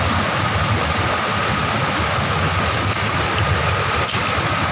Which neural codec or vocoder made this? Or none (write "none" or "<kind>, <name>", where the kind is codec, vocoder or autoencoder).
none